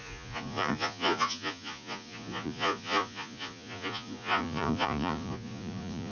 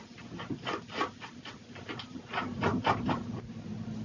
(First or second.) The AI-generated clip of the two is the first